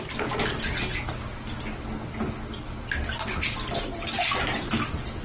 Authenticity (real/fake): real